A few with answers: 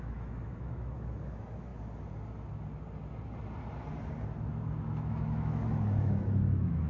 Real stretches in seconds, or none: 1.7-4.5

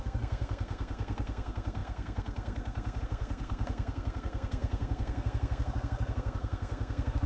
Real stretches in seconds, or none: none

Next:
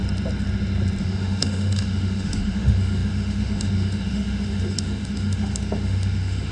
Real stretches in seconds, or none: 0.0-1.0